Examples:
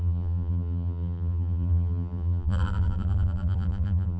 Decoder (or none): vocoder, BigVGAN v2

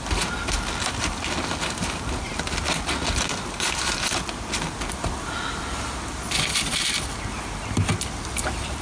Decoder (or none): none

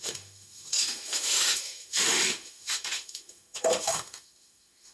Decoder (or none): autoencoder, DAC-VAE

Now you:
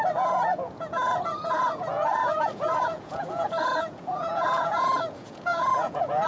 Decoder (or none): vocoder, Vocos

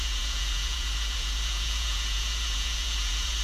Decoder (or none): vocoder, Vocos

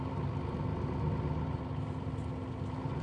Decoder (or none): none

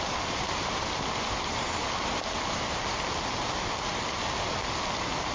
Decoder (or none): none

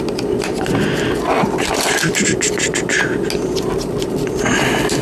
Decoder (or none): none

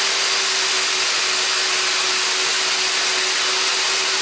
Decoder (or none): none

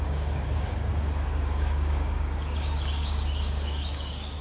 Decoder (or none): codec, DAC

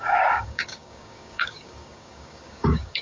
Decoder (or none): codec, DAC